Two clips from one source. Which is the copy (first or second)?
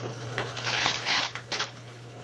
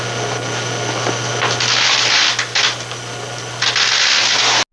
first